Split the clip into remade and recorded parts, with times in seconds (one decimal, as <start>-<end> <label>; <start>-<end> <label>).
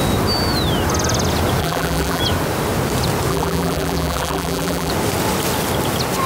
0.0-1.6 recorded; 1.6-2.2 remade; 2.2-3.3 recorded; 3.3-4.9 remade; 4.9-6.3 recorded